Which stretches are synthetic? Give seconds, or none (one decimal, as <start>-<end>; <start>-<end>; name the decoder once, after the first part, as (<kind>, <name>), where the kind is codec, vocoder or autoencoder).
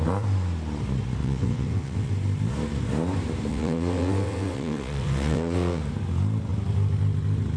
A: 1.2-2.1 (vocoder, WaveNeXt); 3.5-5.8